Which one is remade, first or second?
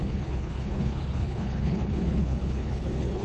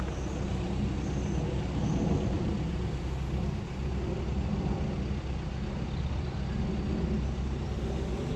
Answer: first